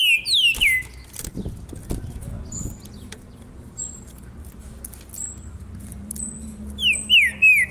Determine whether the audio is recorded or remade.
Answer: recorded